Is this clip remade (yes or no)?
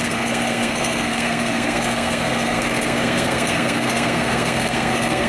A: yes